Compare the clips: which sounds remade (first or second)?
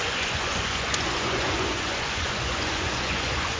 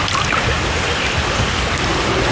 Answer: first